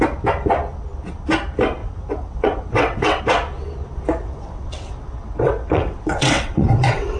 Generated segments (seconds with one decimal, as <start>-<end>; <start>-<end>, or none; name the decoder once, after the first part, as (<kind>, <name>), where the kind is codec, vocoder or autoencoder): 1.8-3.2 (vocoder, WaveNeXt); 4.2-7.2